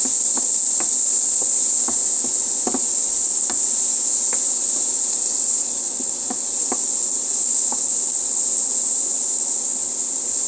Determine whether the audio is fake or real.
real